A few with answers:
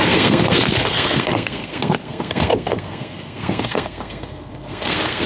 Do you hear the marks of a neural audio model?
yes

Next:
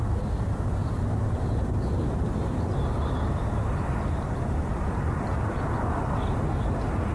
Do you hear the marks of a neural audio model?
yes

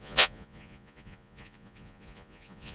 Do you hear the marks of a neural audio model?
yes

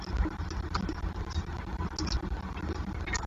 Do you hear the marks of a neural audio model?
no